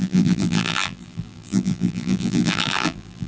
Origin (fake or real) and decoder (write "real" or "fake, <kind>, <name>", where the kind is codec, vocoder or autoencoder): fake, vocoder, BigVGAN v2